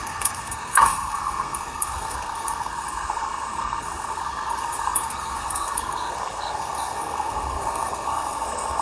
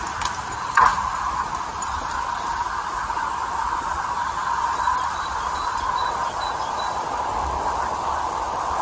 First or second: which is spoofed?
first